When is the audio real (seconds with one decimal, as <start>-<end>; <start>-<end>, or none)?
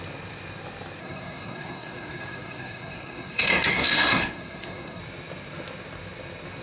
0.0-1.0; 5.0-6.6